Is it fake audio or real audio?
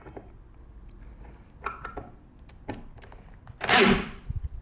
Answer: real